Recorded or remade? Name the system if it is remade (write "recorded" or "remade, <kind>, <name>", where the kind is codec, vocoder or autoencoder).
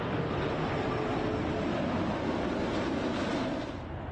recorded